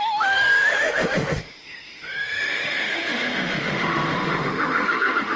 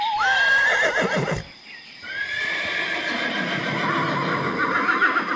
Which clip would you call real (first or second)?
second